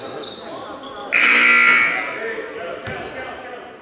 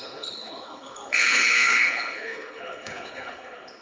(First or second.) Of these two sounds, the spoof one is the second